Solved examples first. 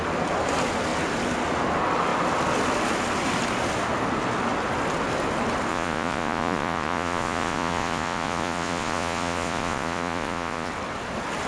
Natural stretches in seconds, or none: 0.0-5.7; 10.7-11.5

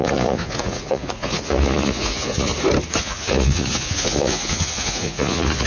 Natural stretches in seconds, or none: 2.5-3.0

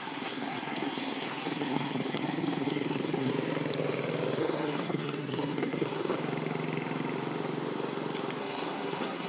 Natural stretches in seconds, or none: 3.3-4.4; 6.2-8.4

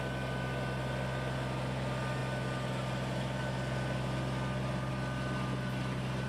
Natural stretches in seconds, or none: 0.0-6.3

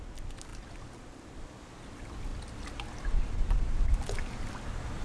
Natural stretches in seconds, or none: 0.0-5.0

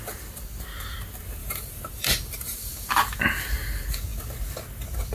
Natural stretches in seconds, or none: 0.0-1.4; 3.0-5.1

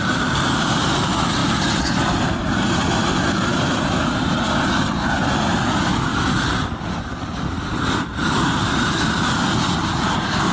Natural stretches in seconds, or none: 0.0-6.1; 9.3-10.5